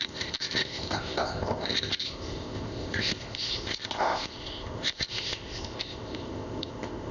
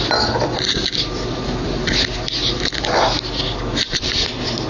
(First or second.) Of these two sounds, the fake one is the first